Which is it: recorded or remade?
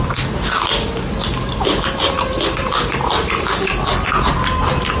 recorded